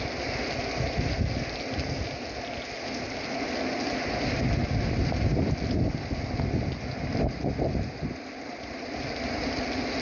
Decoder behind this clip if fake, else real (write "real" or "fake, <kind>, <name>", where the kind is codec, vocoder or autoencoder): real